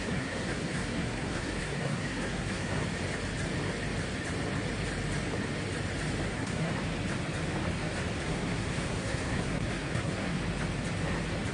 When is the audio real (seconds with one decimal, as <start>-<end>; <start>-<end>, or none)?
2.8-6.2; 6.7-8.2; 10.4-11.5